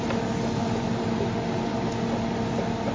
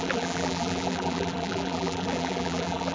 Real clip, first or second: first